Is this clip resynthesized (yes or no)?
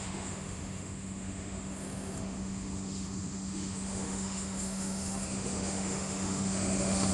yes